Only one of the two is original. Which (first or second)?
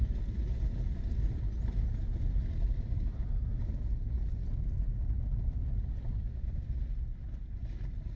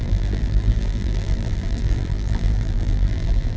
first